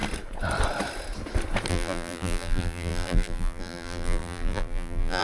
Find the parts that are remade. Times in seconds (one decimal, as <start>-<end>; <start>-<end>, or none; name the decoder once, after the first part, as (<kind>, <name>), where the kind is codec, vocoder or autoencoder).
1.7-5.2 (vocoder, BigVGAN v2)